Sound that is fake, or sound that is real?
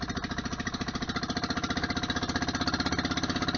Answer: real